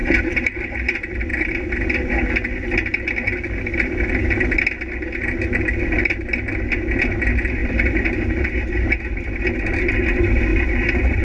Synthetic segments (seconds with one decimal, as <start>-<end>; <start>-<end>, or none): 0.0-0.7; 7.6-9.4; 10.5-11.2